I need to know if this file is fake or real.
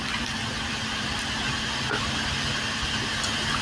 real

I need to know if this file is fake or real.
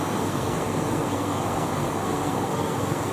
fake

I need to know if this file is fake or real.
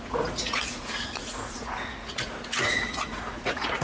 fake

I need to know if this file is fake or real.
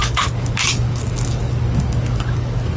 fake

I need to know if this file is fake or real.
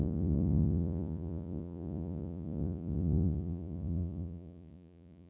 fake